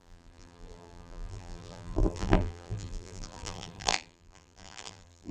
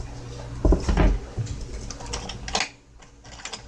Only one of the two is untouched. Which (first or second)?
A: second